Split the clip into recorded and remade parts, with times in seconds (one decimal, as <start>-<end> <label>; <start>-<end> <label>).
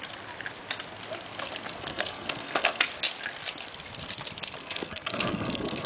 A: 0.0-1.9 recorded; 1.9-2.8 remade; 2.8-4.6 recorded; 4.6-5.9 remade